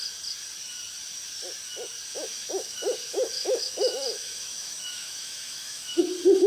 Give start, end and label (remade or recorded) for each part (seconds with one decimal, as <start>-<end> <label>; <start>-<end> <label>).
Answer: 0.0-2.1 recorded; 2.1-6.0 remade; 6.0-6.5 recorded